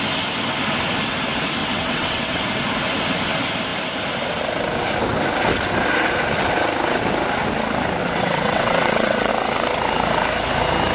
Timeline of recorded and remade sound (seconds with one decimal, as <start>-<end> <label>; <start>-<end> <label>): 0.0-1.6 recorded; 1.6-2.4 remade; 2.4-8.0 recorded; 8.0-9.3 remade; 9.3-10.9 recorded